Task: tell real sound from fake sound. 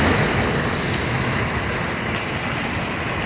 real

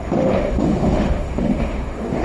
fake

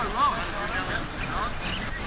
real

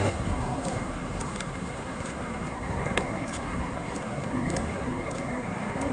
fake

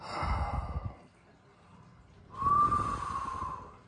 real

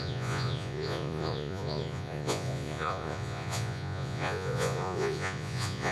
fake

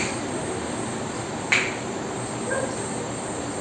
fake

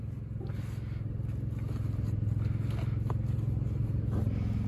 real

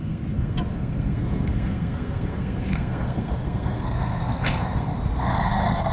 fake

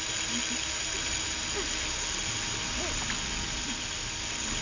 real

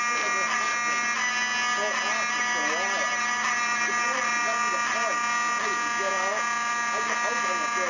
real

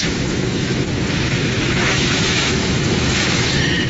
fake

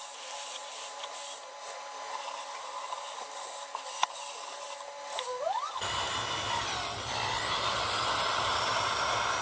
real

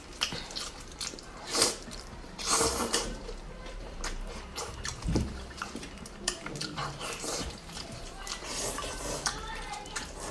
fake